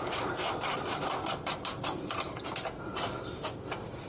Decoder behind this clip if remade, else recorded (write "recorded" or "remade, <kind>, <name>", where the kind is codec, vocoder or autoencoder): recorded